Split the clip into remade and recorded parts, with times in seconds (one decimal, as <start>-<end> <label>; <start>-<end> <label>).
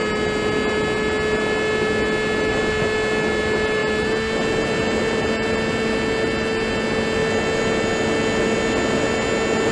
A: 0.0-9.7 recorded